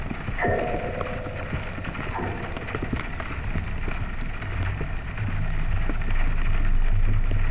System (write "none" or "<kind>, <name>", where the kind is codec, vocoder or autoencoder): none